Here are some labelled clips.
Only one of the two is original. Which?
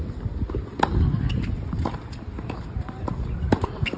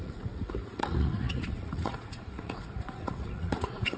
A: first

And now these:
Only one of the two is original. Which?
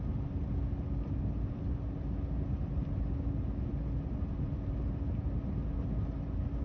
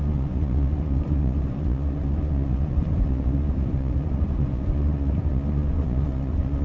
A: first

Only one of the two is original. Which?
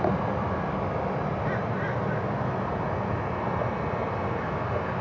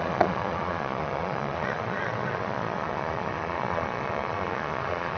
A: first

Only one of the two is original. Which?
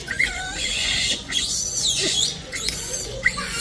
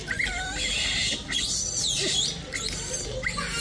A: second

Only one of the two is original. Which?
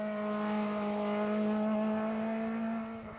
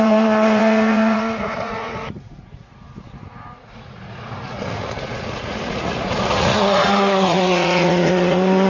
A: first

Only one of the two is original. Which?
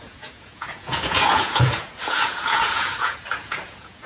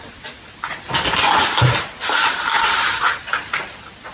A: second